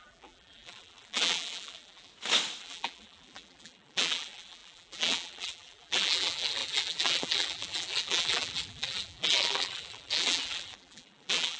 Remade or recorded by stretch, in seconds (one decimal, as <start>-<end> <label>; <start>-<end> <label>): 0.0-2.1 remade; 2.1-2.6 recorded; 2.6-11.6 remade